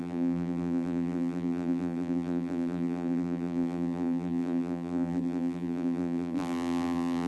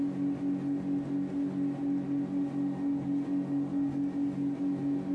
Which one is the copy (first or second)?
first